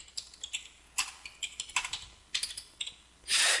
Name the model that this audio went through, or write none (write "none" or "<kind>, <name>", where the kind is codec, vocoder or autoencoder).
none